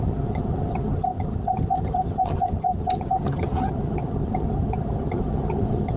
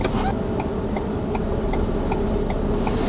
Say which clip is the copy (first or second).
first